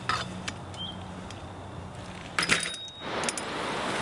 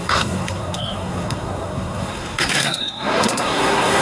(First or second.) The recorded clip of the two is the first